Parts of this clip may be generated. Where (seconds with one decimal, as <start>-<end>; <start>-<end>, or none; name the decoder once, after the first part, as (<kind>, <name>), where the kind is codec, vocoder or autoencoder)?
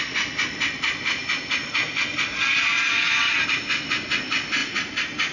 none